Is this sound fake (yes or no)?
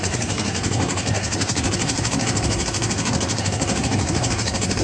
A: yes